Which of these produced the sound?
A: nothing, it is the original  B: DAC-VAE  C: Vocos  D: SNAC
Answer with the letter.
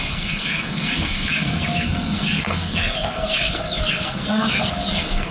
D